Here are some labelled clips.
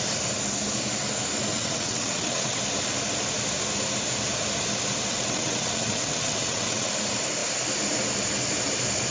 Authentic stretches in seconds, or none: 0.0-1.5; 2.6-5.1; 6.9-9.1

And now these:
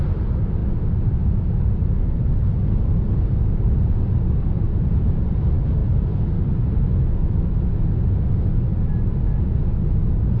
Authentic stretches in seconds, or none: 0.0-10.4

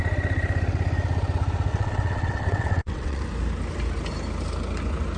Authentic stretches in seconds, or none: 0.0-1.7; 3.2-5.2

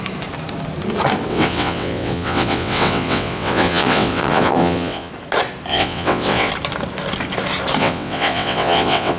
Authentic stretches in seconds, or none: 0.0-1.3; 5.1-5.7; 6.5-7.8

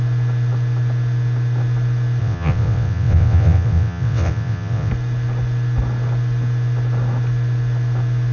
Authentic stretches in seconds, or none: 0.0-2.2; 4.9-8.3

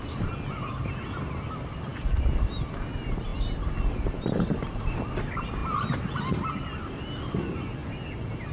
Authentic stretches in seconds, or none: 0.0-8.5

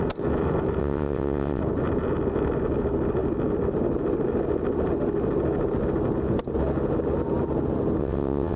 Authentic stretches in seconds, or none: 0.0-0.8; 1.6-8.0